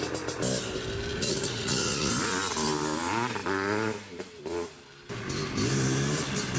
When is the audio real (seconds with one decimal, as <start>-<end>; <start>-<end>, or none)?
0.0-1.1; 2.1-6.6